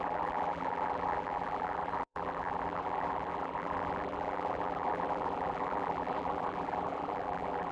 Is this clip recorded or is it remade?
remade